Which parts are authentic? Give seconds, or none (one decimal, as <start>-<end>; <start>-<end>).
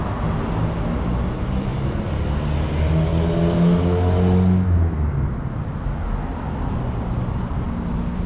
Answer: 0.0-8.3